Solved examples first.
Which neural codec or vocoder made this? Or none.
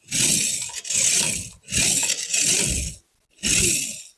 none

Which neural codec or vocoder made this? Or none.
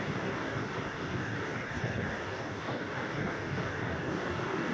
codec, DAC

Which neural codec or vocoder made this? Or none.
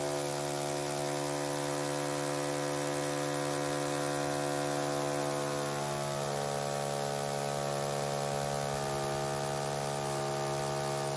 none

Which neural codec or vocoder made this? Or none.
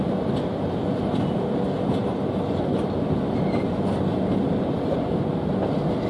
none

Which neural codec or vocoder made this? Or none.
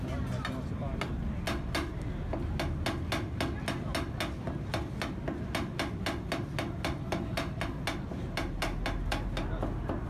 none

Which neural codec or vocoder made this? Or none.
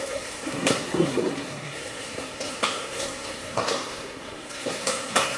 codec, SNAC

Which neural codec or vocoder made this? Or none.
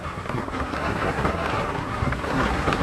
codec, SNAC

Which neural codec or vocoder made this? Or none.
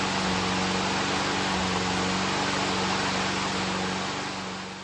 none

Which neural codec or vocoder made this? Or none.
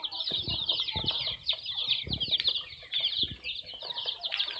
none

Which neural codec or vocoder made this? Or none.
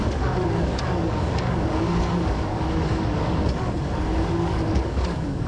codec, DAC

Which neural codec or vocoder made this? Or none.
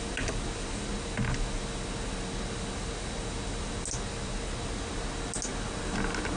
none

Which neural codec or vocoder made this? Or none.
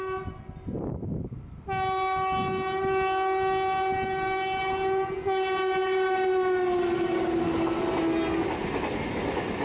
none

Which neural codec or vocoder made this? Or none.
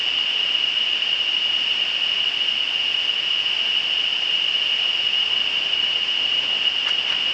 none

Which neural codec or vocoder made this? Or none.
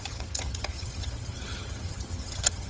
vocoder, HiFi-GAN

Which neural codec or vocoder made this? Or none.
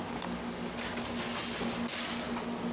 none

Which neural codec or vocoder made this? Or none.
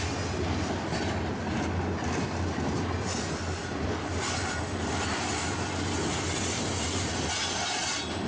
none